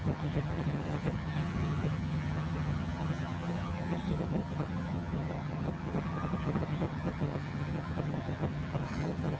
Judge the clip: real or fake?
fake